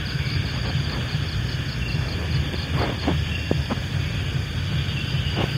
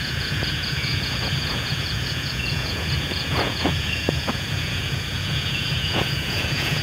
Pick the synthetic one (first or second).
second